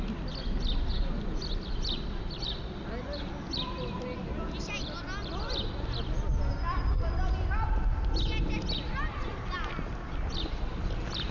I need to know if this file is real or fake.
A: real